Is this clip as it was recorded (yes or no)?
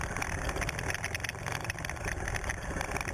yes